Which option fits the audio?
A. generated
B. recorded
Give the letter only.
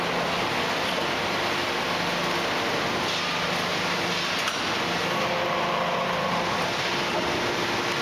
B